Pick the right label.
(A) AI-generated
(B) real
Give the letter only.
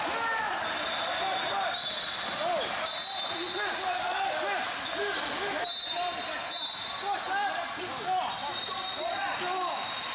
B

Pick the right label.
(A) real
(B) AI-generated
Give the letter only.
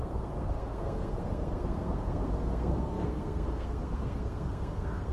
B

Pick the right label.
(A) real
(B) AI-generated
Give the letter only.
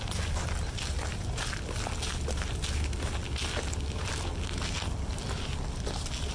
A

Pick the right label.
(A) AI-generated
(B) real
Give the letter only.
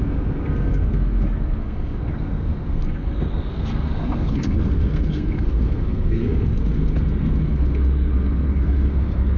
A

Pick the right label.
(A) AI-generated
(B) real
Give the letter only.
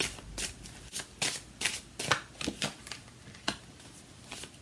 B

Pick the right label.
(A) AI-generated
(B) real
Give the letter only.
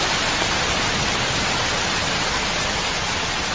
B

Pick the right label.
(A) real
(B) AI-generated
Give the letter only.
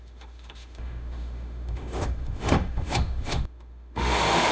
B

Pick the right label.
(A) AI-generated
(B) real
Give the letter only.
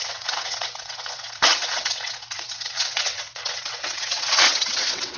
A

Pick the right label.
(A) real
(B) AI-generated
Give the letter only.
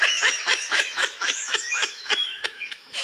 B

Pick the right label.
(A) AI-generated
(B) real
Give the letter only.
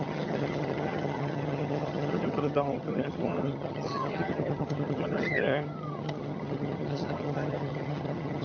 A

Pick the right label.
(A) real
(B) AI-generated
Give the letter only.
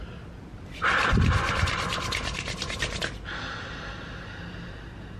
A